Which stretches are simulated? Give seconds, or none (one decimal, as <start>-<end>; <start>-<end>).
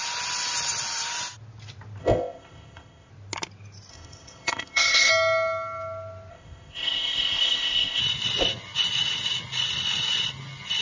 2.0-3.1; 3.9-5.1; 6.3-8.0